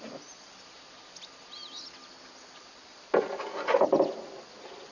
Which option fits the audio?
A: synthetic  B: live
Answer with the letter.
B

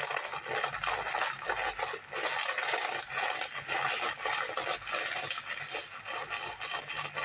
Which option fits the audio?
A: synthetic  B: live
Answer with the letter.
B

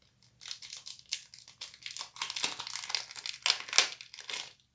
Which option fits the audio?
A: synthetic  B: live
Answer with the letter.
B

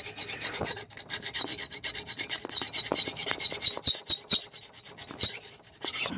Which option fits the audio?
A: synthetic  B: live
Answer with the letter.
B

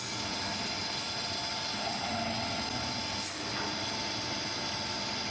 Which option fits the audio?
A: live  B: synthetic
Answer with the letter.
A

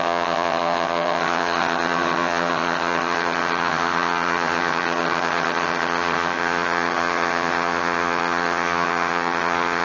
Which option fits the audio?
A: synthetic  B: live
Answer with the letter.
A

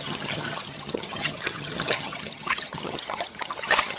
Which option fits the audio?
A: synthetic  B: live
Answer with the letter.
A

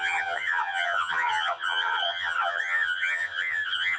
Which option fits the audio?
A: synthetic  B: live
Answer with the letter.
A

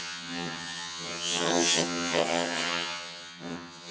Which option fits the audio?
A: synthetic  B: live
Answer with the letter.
A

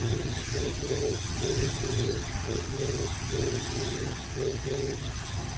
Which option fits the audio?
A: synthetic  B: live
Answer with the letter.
A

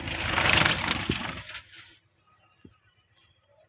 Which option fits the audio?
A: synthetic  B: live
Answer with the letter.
B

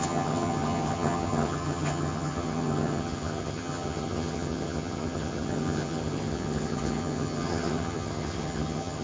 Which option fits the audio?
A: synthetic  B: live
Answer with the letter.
A